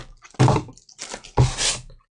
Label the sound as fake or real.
real